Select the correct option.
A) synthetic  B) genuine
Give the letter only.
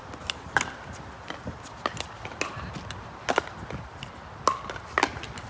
B